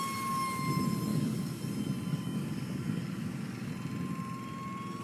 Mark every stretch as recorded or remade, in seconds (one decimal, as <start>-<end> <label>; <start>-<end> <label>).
0.0-1.1 recorded; 1.1-1.7 remade; 1.7-2.1 recorded; 2.1-3.7 remade; 3.7-5.0 recorded